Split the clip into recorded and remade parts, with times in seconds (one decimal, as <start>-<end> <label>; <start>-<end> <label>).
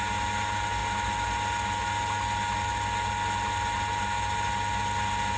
0.0-5.4 recorded